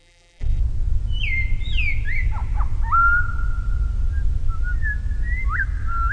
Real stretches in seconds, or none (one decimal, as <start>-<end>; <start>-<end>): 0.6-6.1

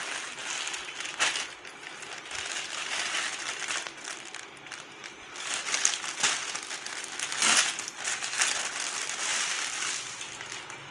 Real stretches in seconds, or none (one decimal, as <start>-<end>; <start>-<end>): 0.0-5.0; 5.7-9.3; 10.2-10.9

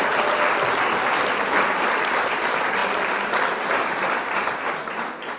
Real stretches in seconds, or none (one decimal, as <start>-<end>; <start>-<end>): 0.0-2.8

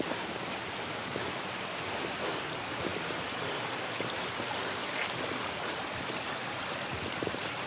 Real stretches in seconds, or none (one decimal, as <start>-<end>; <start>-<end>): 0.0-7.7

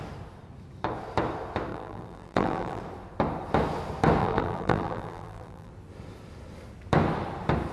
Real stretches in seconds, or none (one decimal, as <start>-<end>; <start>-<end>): 0.0-1.7; 2.8-4.2; 5.7-7.7

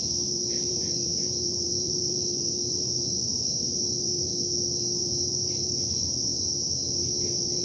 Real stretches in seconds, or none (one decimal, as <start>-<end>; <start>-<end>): 4.3-5.0; 6.3-7.0